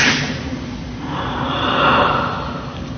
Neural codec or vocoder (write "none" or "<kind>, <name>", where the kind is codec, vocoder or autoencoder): none